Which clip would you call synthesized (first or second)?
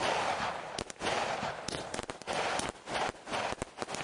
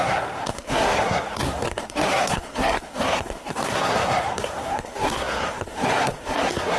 second